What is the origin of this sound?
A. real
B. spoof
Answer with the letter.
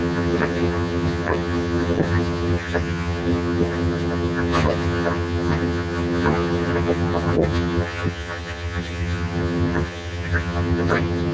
B